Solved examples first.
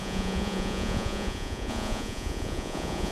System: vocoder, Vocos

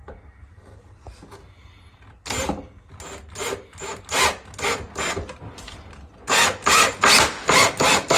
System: none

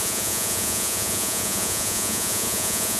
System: vocoder, Vocos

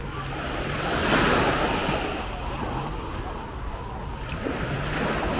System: none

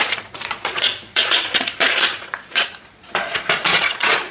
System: vocoder, Vocos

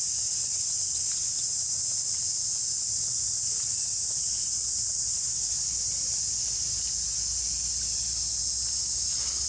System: none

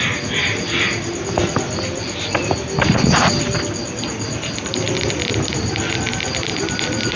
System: none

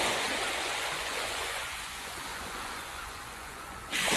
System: vocoder, Vocos